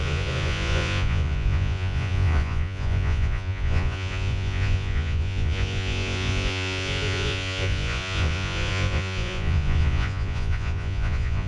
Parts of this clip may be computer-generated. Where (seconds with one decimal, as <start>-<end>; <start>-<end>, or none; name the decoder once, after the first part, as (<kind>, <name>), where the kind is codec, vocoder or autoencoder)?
0.0-11.5 (vocoder, Vocos)